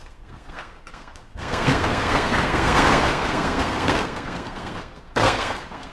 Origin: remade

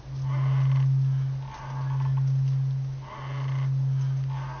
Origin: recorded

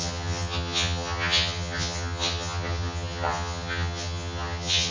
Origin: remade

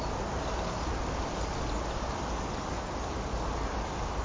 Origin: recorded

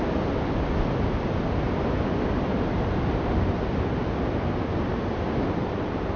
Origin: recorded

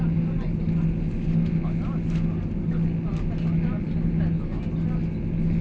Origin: recorded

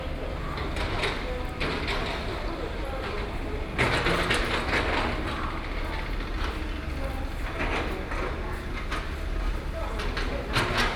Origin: recorded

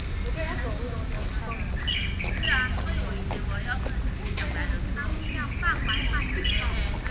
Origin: recorded